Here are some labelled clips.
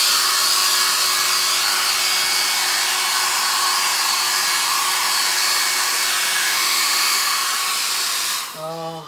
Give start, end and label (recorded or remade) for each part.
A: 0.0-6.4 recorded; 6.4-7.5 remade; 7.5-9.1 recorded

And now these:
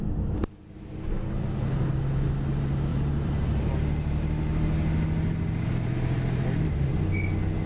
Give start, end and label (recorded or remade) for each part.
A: 0.0-2.9 recorded; 2.9-3.6 remade; 3.6-7.7 recorded

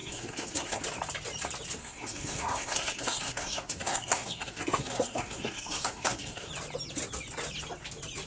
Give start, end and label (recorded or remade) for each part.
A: 0.0-0.8 remade; 0.8-1.8 recorded; 1.8-6.5 remade; 6.5-8.3 recorded